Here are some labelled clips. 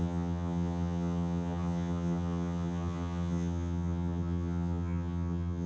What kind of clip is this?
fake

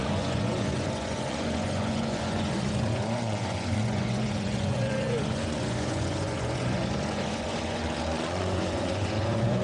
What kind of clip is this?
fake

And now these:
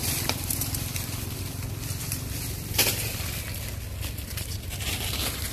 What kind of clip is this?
fake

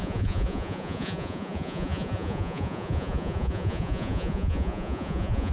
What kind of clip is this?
fake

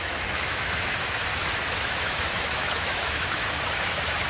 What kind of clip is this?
fake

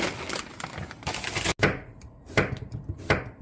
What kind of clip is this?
real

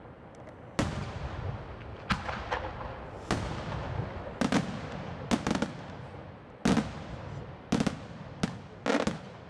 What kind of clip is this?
real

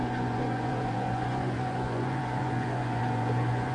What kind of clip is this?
fake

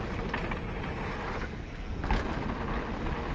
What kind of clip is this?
real